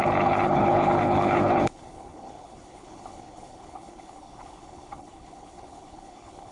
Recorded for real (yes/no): no